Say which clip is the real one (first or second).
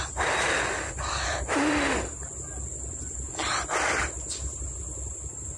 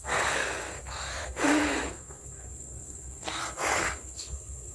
first